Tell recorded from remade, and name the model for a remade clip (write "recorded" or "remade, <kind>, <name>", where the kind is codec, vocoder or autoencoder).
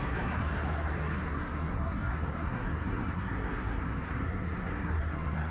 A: remade, codec, SNAC